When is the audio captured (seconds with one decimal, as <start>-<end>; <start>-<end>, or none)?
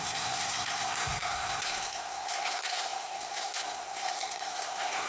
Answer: none